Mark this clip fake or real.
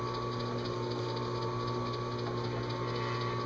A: real